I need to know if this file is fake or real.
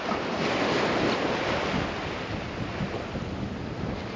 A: real